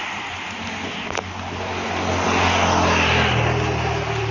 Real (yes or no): yes